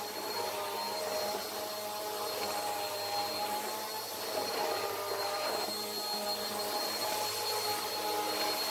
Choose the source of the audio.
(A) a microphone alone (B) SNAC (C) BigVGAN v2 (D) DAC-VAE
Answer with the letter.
A